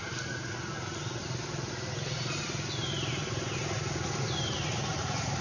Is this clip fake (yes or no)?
no